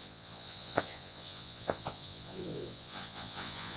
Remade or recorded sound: remade